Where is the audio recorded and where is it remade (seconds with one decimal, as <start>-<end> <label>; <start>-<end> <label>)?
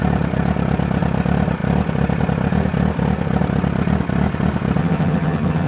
0.0-4.8 recorded; 4.8-5.7 remade